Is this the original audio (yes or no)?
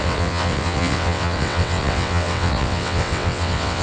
no